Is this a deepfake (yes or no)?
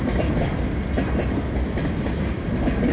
no